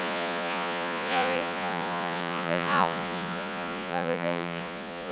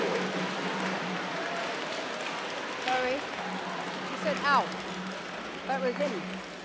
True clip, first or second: second